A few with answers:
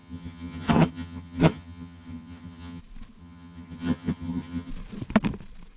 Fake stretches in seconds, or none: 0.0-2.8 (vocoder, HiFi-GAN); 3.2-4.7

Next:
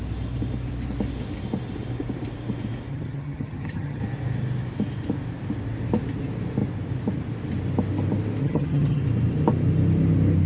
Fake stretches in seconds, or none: 2.9-4.0 (vocoder, HiFi-GAN); 8.4-9.0

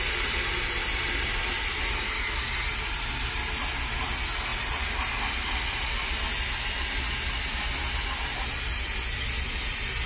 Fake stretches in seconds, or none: none